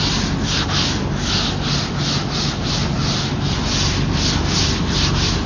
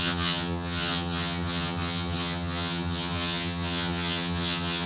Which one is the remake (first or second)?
second